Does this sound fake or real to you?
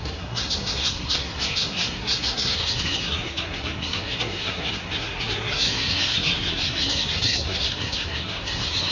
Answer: fake